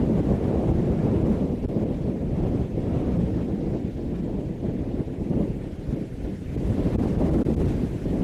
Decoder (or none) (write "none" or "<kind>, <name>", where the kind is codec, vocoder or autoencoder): none